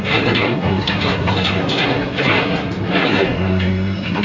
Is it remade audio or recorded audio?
remade